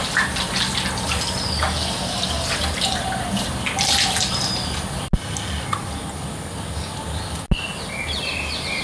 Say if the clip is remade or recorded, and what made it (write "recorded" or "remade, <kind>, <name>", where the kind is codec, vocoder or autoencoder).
recorded